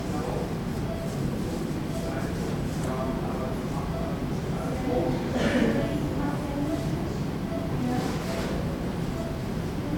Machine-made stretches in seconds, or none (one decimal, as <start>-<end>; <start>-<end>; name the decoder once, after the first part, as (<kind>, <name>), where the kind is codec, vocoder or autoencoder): none